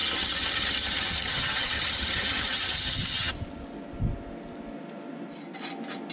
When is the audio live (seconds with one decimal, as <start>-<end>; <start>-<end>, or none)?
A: 3.3-6.1